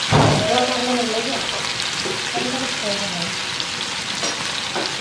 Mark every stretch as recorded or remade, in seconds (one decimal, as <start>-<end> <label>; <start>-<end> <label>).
0.0-5.0 recorded